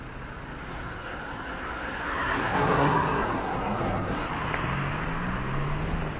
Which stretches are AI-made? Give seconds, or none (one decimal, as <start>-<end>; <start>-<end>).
0.6-4.3